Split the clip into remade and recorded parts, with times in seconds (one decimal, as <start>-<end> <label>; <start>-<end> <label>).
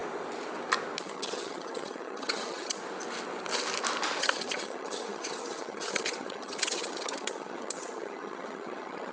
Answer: 0.0-1.0 recorded; 1.0-2.8 remade; 2.8-4.2 recorded; 4.2-9.1 remade